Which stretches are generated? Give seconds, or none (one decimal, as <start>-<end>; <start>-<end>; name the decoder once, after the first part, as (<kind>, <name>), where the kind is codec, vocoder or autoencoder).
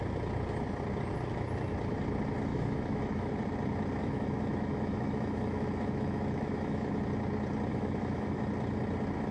2.5-3.3 (autoencoder, DAC-VAE); 4.0-7.0; 7.7-8.4